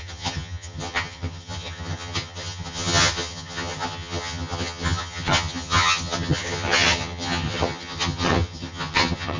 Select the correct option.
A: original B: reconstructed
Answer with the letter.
B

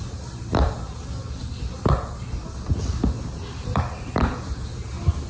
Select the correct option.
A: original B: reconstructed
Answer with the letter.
A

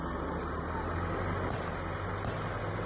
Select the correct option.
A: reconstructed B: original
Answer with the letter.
B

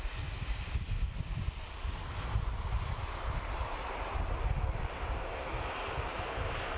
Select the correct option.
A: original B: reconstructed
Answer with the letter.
A